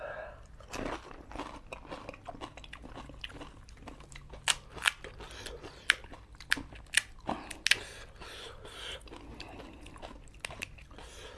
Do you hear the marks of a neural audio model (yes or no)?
no